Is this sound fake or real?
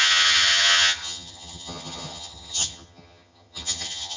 fake